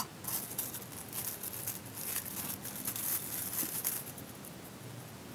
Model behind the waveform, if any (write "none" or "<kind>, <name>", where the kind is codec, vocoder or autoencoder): none